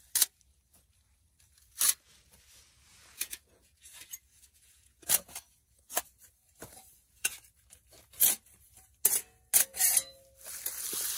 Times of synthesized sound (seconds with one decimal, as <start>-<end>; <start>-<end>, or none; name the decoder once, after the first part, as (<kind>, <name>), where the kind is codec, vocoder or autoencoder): 2.9-7.4 (vocoder, Vocos)